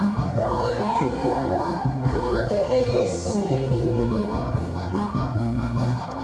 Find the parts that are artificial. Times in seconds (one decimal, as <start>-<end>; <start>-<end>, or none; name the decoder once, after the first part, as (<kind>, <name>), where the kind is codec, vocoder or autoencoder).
0.0-6.2 (codec, SNAC)